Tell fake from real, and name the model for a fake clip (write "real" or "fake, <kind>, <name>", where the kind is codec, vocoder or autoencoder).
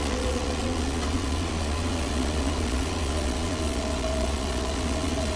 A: fake, vocoder, Vocos